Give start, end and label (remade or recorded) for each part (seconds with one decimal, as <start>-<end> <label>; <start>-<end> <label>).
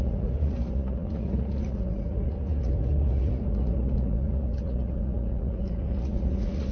0.0-6.7 remade